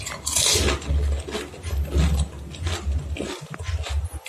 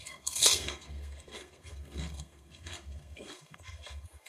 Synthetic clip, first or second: second